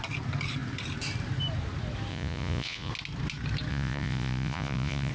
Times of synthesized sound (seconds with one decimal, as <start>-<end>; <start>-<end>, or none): 2.1-2.9; 3.7-5.1